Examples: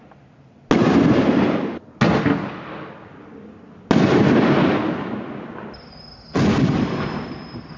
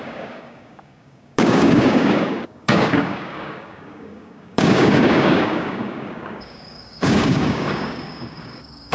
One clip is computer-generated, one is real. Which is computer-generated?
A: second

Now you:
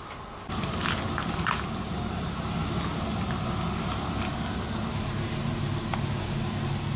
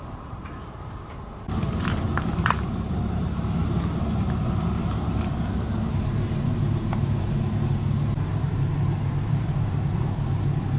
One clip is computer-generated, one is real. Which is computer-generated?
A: second